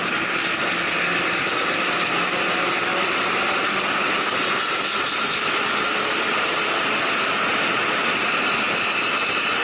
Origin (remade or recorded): recorded